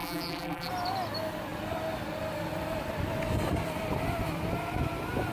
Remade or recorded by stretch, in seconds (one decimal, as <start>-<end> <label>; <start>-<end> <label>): 0.0-0.7 remade; 0.7-5.3 recorded